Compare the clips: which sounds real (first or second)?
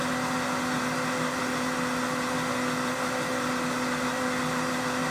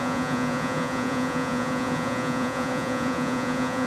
first